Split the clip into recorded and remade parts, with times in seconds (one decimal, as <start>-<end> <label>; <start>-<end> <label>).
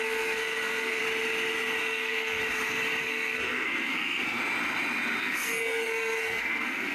0.0-1.0 remade; 1.0-1.8 recorded; 1.8-2.4 remade; 2.4-3.0 recorded; 3.0-4.4 remade; 4.4-5.2 recorded; 5.2-6.9 remade